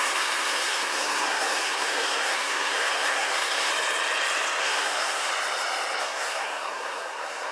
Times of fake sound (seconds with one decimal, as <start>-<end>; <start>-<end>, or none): 0.0-3.7; 4.6-5.3; 6.0-7.5